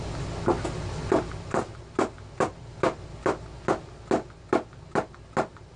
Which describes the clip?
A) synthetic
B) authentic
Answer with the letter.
B